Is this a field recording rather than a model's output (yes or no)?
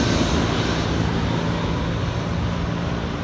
yes